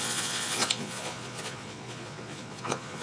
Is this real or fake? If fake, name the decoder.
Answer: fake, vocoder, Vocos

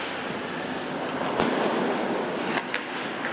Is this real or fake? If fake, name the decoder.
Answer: real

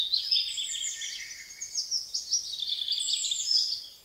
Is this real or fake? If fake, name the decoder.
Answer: real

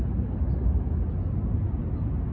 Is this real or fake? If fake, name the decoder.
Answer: real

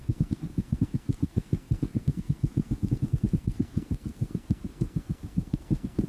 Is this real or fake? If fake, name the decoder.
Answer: fake, codec, SNAC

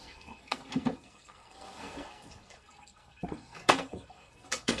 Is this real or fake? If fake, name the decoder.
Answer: fake, codec, SNAC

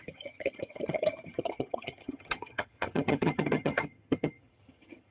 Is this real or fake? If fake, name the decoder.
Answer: fake, vocoder, HiFi-GAN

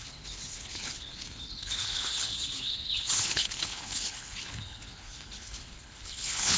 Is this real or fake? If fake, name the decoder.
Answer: fake, codec, HILCodec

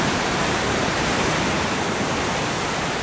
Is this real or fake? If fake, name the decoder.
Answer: real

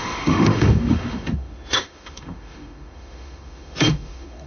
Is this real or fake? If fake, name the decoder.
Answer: fake, autoencoder, DAC-VAE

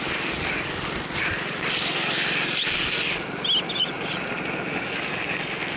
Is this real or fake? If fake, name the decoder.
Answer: real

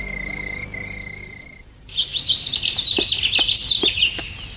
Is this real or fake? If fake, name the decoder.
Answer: real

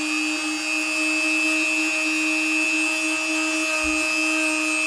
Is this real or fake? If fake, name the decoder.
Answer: real